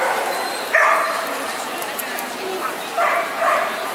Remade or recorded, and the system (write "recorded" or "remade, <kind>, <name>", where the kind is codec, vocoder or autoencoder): remade, vocoder, BigVGAN v2